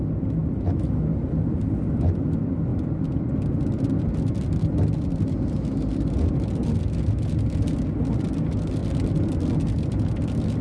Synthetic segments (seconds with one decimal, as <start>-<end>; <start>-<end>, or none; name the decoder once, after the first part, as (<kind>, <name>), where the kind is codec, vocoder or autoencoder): none